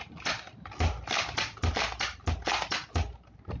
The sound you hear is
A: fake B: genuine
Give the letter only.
B